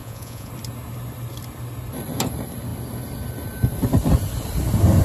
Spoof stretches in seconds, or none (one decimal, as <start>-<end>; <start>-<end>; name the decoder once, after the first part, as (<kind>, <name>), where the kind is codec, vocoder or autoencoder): 0.0-0.5 (vocoder, Vocos)